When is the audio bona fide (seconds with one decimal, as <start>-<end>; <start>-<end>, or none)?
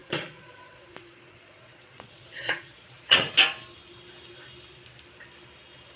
3.3-6.0